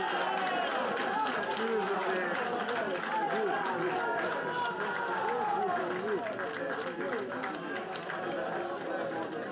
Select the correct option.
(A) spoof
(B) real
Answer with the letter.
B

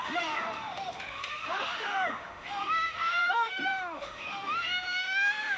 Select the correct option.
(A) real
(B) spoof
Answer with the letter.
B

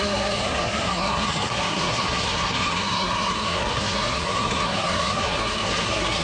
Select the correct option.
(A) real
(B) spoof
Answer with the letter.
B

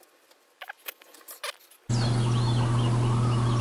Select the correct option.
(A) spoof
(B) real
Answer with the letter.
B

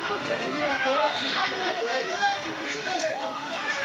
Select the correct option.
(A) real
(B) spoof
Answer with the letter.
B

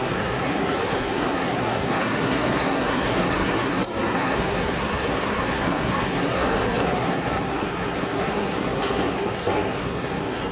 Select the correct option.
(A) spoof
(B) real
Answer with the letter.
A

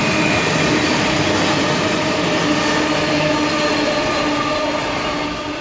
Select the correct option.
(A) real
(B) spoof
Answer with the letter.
A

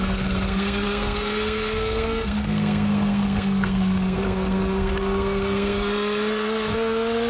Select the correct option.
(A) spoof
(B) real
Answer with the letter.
A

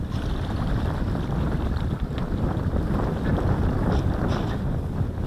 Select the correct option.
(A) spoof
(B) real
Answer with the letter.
A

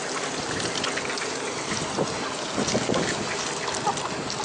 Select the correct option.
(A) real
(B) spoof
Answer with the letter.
A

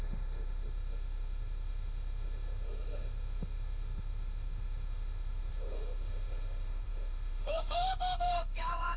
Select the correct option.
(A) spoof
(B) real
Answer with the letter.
A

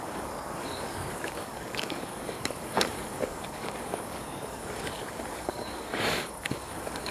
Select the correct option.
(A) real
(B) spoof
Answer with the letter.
B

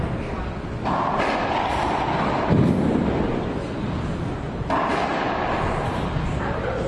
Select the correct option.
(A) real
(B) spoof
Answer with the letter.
B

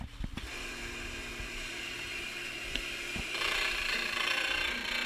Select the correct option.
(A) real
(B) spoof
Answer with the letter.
B